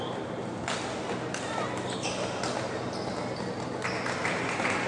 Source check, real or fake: real